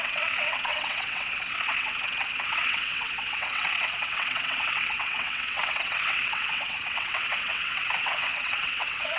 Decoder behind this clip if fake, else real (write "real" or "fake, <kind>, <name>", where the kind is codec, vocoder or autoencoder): fake, vocoder, WaveNeXt